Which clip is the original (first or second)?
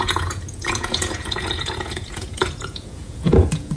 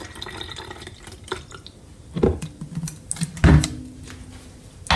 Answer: second